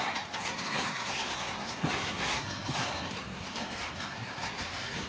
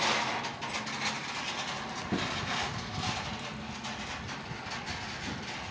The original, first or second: second